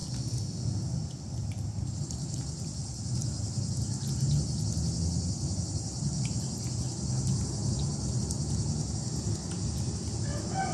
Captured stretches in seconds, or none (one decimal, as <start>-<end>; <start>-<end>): 0.0-10.7